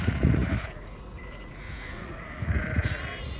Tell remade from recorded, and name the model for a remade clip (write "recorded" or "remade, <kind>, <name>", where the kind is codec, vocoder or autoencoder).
remade, vocoder, Vocos